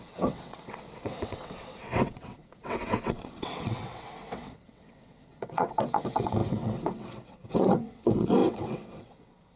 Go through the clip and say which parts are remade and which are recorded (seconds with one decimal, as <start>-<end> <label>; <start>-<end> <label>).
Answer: 0.0-9.6 remade

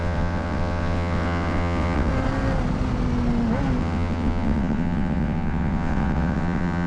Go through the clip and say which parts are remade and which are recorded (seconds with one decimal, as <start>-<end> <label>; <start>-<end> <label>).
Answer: 0.0-2.1 remade; 2.1-3.8 recorded; 3.8-6.9 remade

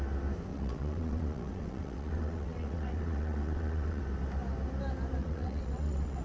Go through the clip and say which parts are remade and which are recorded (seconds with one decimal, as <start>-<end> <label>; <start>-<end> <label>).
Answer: 0.0-0.5 recorded; 0.5-4.0 remade; 4.0-5.2 recorded; 5.2-6.2 remade

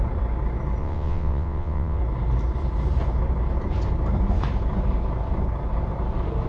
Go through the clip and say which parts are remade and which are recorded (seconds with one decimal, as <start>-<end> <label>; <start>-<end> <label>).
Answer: 0.0-0.8 recorded; 0.8-2.0 remade; 2.0-6.5 recorded

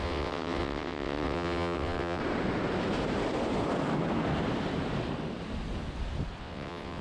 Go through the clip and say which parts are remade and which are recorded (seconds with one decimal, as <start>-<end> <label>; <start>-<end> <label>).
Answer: 0.0-2.2 remade; 2.2-6.4 recorded; 6.4-7.0 remade

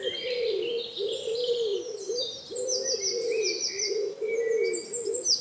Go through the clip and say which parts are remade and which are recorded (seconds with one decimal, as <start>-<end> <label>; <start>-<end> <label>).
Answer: 0.0-5.4 recorded

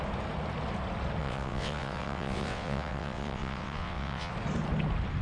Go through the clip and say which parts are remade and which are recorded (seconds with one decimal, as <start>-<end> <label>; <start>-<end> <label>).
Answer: 0.0-1.2 recorded; 1.2-4.3 remade; 4.3-5.2 recorded